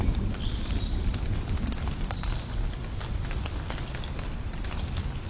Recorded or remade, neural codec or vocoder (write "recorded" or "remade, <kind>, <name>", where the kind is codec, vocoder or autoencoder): recorded